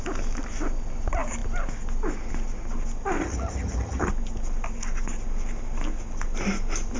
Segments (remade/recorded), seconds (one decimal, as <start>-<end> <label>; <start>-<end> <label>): 0.0-3.2 recorded; 3.2-4.1 remade; 4.1-7.0 recorded